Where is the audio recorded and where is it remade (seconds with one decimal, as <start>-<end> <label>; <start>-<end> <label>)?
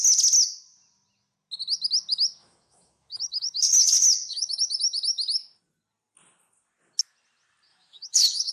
0.0-2.4 recorded; 2.4-4.6 remade; 4.6-7.7 recorded; 7.7-8.5 remade